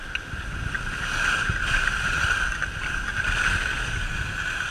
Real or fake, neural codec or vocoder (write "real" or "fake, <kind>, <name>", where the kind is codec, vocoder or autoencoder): real